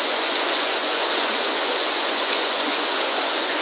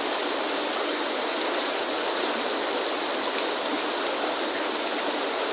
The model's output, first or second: first